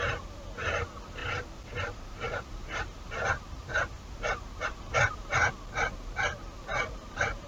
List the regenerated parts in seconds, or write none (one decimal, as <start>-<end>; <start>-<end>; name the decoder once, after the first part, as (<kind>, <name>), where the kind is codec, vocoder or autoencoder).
1.2-5.5 (vocoder, BigVGAN v2); 6.7-7.5